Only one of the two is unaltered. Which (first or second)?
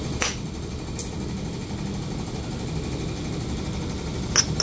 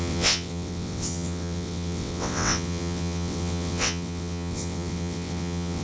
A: first